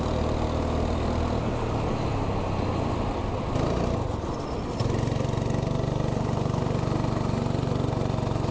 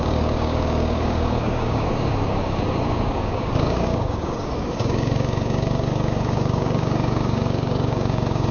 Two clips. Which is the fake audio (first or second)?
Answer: second